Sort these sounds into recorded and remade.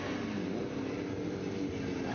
recorded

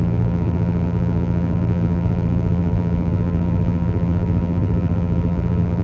remade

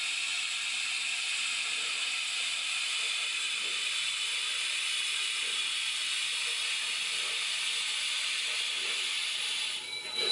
remade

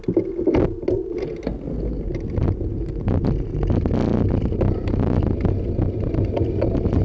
recorded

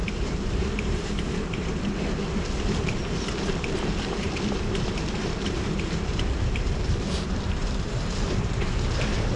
remade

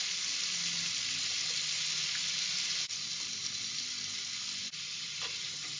recorded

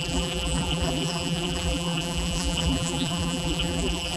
remade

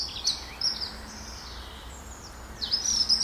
remade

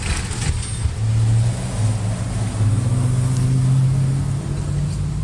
recorded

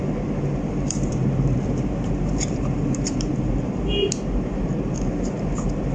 remade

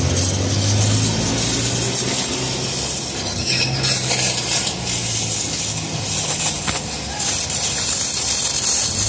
recorded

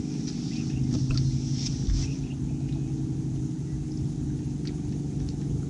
recorded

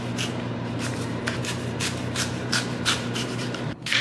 remade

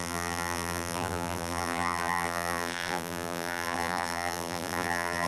remade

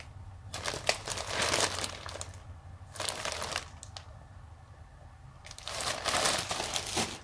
recorded